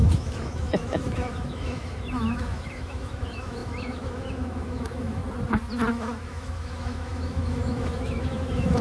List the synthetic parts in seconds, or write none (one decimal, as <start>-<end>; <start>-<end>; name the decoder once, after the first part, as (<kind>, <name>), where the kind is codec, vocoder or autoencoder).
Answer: 0.0-5.2 (autoencoder, DAC-VAE); 5.9-8.8